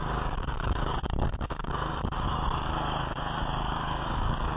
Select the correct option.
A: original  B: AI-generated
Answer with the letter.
B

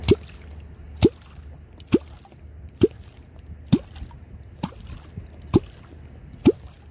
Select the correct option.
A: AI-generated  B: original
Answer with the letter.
B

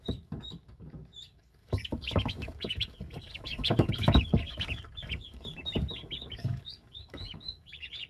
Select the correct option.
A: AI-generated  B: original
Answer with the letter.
A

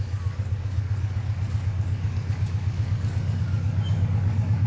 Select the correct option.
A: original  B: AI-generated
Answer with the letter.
B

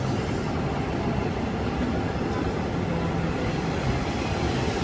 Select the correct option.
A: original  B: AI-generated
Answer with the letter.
A